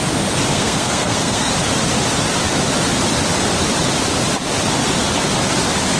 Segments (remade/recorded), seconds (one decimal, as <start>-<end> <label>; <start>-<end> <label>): 0.0-0.5 recorded; 0.5-1.5 remade; 1.5-6.0 recorded